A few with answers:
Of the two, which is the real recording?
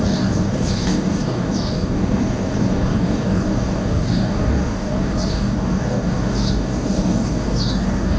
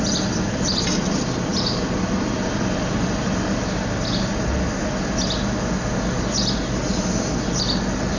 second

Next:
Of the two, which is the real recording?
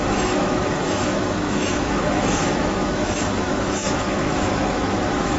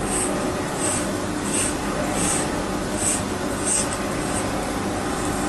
second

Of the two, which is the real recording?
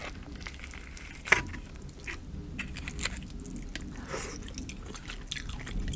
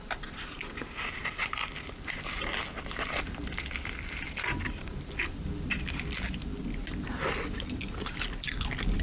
first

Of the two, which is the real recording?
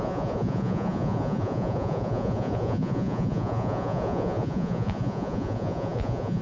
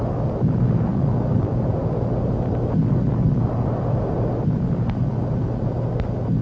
second